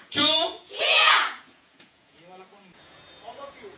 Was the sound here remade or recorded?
remade